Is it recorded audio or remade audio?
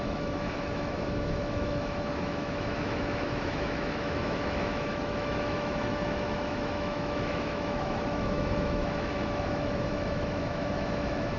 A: remade